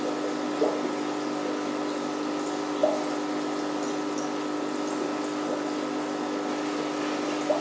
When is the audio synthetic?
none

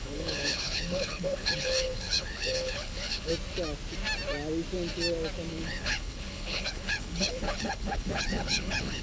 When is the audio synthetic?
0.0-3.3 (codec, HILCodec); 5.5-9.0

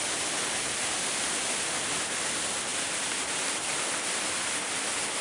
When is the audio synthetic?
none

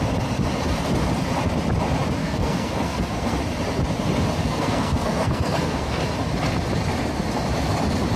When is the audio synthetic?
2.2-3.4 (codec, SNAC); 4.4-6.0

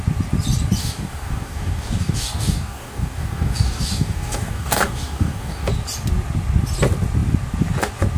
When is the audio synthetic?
0.8-5.7 (codec, DAC)